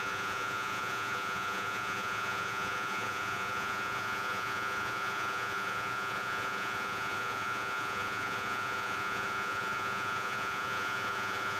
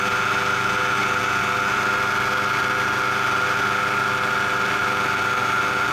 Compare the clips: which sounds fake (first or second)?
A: first